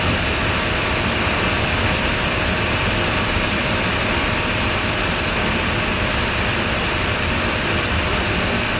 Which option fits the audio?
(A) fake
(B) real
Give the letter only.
B